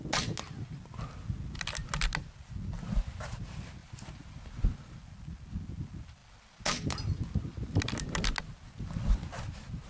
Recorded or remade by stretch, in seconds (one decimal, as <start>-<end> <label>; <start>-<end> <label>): 0.0-9.9 recorded